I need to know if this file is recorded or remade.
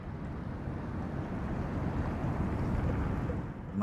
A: recorded